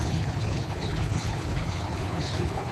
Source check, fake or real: fake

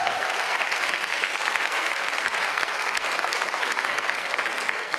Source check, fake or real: fake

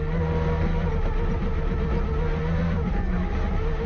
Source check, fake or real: real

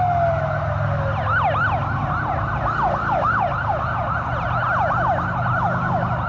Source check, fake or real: real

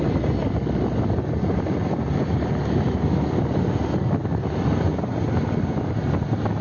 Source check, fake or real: real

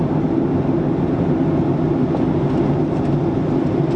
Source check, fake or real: real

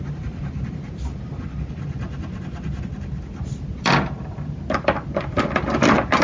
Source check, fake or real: real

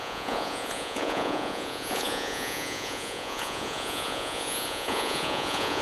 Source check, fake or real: fake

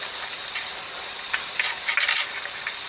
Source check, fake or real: real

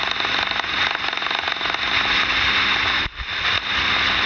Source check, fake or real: real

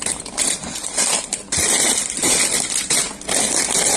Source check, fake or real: real